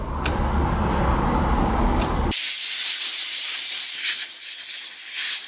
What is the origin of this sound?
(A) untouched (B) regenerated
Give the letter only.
A